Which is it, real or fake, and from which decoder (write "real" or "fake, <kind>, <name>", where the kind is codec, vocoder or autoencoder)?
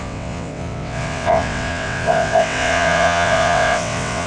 fake, vocoder, WaveNeXt